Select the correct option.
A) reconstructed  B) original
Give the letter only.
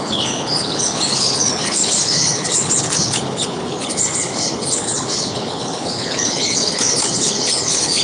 A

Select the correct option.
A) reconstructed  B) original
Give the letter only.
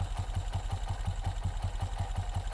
B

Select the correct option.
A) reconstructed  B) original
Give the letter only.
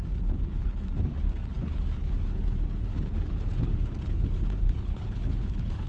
A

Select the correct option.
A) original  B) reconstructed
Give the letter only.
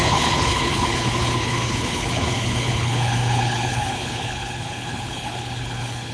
B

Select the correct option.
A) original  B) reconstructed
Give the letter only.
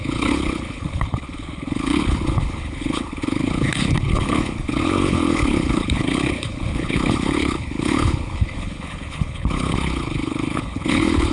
B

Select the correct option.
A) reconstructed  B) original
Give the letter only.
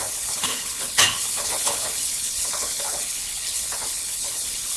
A